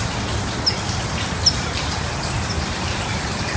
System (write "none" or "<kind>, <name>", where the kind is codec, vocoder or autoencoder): none